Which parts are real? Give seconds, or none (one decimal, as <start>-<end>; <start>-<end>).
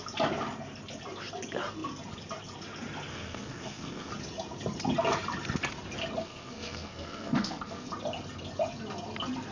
0.0-3.1; 4.1-6.2; 7.9-9.5